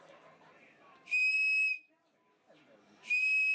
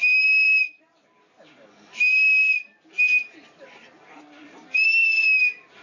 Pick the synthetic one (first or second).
second